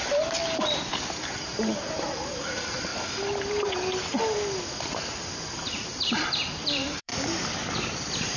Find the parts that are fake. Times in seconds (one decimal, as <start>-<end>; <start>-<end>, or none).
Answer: 0.0-0.4; 1.3-2.9; 5.4-7.1; 7.7-8.4